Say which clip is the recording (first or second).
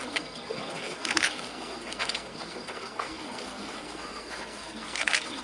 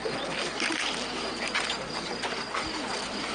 second